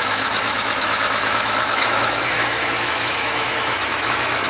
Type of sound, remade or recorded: remade